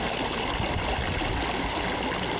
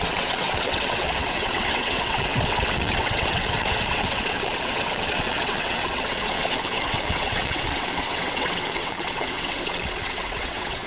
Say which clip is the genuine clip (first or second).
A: first